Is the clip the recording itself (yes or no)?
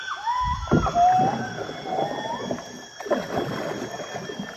yes